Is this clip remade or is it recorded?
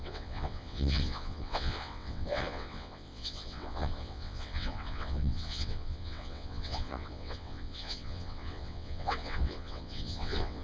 remade